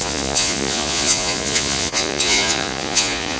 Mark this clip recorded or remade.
remade